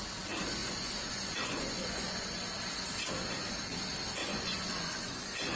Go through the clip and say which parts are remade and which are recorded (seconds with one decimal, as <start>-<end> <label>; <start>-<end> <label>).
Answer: 0.0-0.6 recorded; 0.6-2.4 remade; 2.4-4.2 recorded; 4.2-5.6 remade